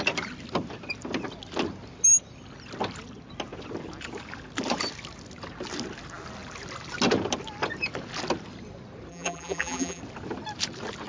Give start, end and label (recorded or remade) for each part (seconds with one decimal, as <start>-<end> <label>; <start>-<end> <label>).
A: 0.0-9.1 recorded; 9.1-10.0 remade; 10.0-11.1 recorded